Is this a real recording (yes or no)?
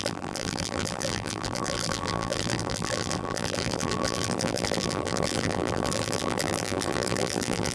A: no